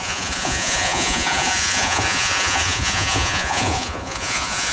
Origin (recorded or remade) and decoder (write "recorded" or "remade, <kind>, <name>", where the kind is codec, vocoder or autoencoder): remade, vocoder, Vocos